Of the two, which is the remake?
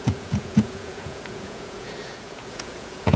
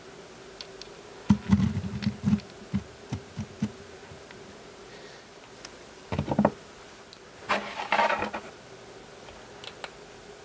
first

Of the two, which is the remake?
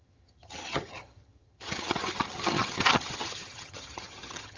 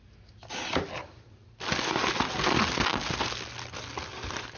first